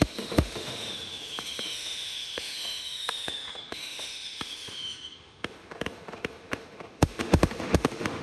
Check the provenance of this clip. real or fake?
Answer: fake